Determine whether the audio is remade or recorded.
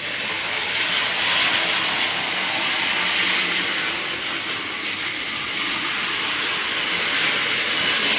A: recorded